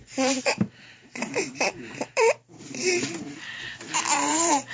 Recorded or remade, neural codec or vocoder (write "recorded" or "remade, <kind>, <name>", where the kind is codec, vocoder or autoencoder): remade, vocoder, BigVGAN v2